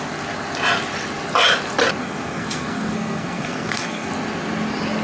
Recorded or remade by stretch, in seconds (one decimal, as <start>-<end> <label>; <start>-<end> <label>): 0.0-2.0 recorded; 2.0-4.1 remade; 4.1-5.0 recorded